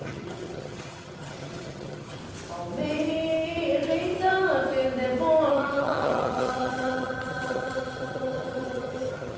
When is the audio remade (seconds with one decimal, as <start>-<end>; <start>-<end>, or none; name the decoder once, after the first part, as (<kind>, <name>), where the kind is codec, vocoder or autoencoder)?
0.0-2.2 (vocoder, HiFi-GAN); 5.5-9.4